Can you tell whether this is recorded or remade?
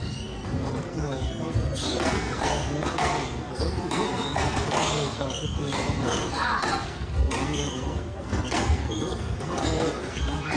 remade